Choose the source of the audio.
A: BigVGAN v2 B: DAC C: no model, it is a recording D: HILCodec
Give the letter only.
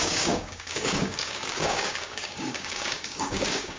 B